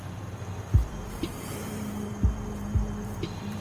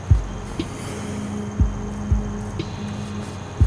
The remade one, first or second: first